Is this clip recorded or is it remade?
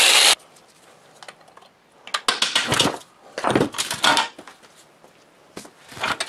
recorded